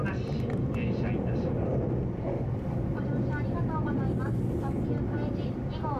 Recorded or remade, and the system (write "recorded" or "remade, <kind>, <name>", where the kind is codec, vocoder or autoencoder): recorded